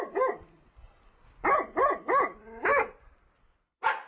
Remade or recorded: recorded